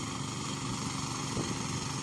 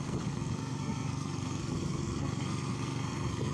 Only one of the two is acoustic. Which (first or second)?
first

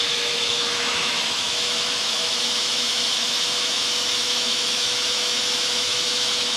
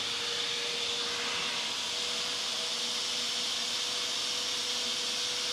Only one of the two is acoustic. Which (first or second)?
second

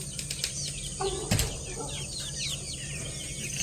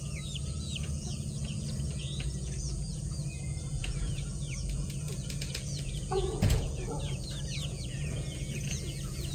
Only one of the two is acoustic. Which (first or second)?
first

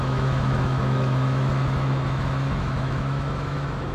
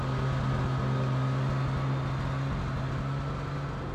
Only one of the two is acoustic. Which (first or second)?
second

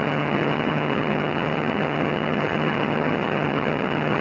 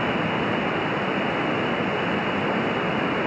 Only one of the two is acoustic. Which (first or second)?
second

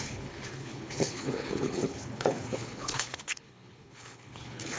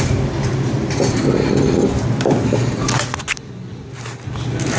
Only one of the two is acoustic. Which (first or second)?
second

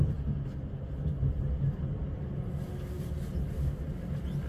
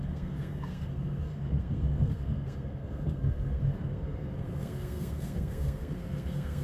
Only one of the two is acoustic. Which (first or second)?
first